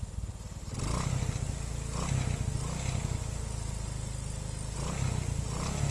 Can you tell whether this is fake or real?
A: real